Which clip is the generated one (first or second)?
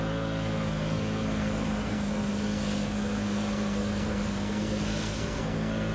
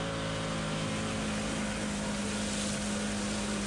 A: first